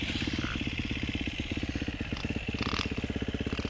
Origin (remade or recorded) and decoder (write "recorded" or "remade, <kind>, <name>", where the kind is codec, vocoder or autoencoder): recorded